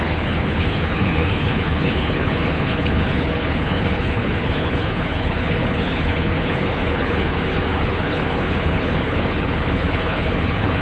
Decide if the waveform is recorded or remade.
remade